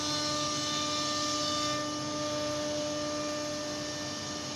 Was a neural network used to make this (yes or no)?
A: no